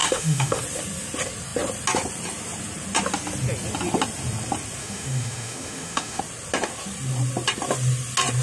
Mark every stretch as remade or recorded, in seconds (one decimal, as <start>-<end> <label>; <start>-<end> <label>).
0.0-0.6 remade; 0.6-4.8 recorded; 4.8-6.2 remade; 6.2-8.4 recorded